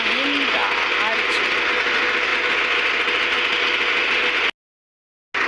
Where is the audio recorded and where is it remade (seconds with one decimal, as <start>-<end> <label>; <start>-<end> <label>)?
0.0-5.5 recorded